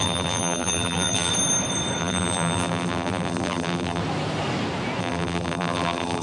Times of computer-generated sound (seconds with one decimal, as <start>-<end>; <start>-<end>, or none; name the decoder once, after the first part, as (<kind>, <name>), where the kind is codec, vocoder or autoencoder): 0.0-1.3 (vocoder, BigVGAN v2); 2.0-4.0; 5.0-6.2